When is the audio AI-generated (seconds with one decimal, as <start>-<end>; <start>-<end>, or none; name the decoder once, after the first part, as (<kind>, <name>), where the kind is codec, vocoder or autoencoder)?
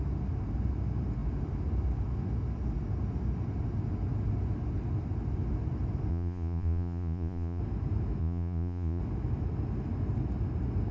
6.1-7.6 (vocoder, Vocos); 8.2-9.0